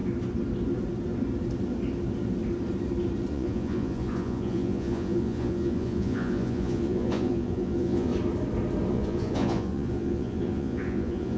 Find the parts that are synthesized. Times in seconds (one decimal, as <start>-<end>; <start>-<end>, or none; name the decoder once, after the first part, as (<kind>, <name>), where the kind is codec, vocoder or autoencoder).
3.3-8.1 (vocoder, Vocos); 8.9-11.4